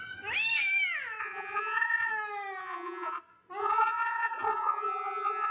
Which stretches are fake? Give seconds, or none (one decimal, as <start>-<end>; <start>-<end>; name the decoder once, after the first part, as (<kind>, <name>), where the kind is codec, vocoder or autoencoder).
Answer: 1.2-2.1 (vocoder, Vocos); 2.6-3.2; 3.6-5.5